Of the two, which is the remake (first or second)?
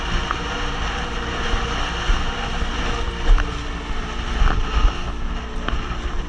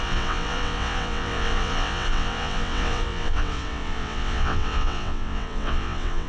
second